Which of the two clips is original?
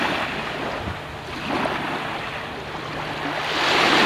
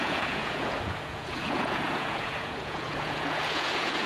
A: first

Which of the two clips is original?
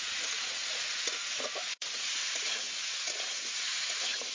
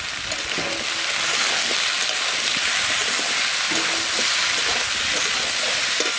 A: second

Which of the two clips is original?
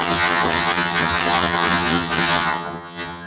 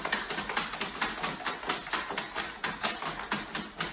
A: second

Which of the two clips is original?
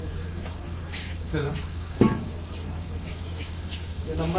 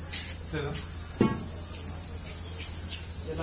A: second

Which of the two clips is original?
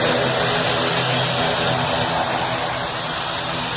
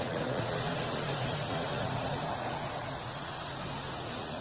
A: first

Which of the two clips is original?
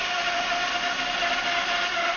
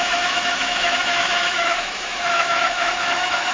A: first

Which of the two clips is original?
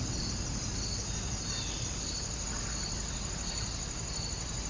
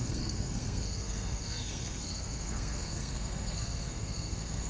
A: first